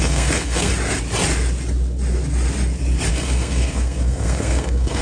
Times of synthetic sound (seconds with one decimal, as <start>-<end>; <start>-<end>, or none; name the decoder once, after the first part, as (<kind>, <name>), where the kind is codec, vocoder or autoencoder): 0.0-0.7 (codec, SNAC); 3.1-5.0